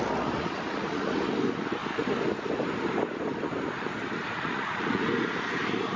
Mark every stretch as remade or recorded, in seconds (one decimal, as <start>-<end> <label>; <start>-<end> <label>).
0.0-0.4 recorded; 0.4-1.2 remade; 1.2-4.3 recorded; 4.3-5.0 remade; 5.0-6.0 recorded